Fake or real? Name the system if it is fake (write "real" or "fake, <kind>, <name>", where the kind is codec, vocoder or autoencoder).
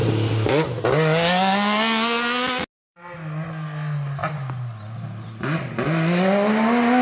real